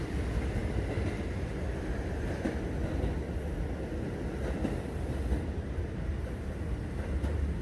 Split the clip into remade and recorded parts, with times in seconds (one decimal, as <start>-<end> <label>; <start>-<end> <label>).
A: 0.0-7.6 recorded